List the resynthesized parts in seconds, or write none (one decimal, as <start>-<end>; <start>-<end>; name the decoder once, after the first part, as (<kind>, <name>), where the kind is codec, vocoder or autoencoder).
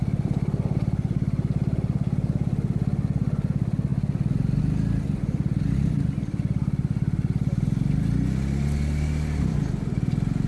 none